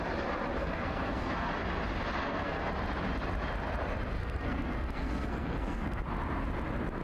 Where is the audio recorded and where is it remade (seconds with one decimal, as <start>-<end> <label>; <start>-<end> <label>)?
0.0-0.6 recorded; 0.6-1.5 remade; 1.5-2.2 recorded; 2.2-2.7 remade; 2.7-4.2 recorded; 4.2-6.0 remade; 6.0-7.0 recorded